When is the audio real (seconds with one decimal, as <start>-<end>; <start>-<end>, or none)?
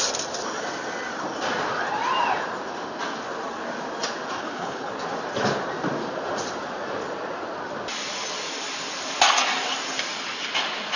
0.0-4.4; 4.9-11.0